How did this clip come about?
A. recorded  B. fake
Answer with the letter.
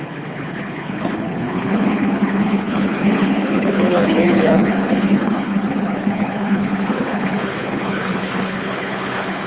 B